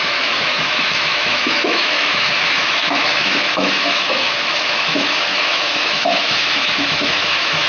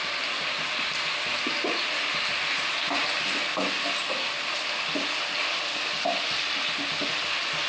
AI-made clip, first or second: first